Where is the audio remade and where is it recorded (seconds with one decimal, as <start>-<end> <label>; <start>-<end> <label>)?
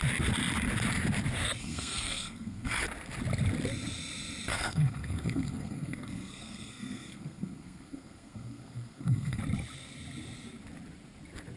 0.0-1.6 recorded; 1.6-2.8 remade; 2.8-4.5 recorded; 4.5-9.4 remade; 9.4-11.6 recorded